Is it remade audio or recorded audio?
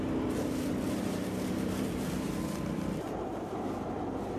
remade